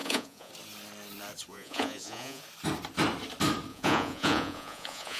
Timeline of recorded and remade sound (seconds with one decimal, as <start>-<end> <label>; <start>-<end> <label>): 0.0-0.5 remade; 0.5-1.5 recorded; 1.5-2.4 remade; 2.4-3.7 recorded; 3.7-5.2 remade